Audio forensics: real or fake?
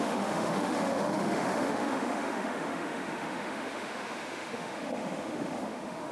fake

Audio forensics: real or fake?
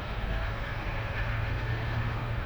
fake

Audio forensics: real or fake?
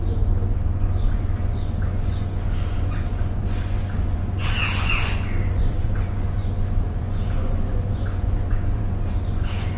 fake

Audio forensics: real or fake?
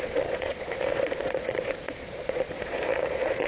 fake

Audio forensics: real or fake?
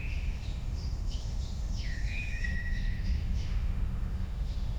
fake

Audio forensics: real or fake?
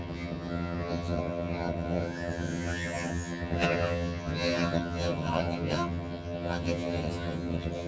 fake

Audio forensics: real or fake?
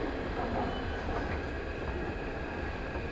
real